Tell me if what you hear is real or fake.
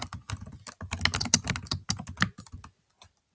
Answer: real